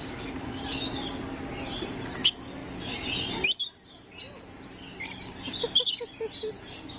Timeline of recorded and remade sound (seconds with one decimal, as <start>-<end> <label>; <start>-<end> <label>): 0.0-7.0 recorded